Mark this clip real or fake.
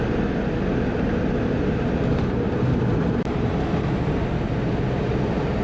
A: real